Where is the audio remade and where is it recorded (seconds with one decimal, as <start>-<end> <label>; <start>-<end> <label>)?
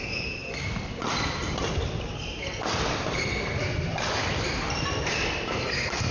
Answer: 0.0-6.1 recorded